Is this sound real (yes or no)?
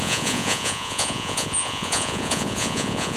no